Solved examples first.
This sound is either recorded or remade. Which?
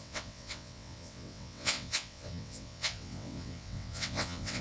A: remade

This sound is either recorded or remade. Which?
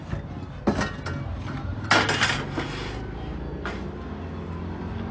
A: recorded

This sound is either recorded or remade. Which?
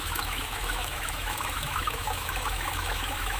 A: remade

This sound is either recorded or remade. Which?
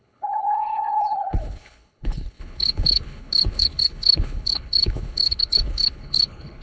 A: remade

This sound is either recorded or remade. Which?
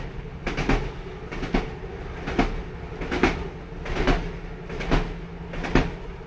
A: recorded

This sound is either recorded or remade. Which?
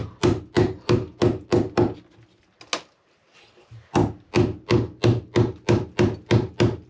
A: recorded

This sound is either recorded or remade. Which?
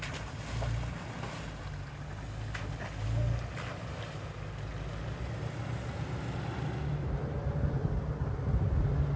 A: recorded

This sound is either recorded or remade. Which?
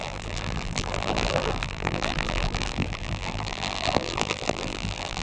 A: remade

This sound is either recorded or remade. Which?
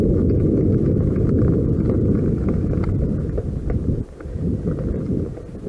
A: recorded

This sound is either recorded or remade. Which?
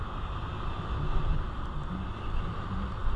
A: recorded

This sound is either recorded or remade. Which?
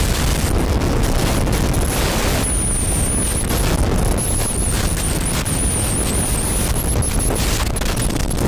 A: recorded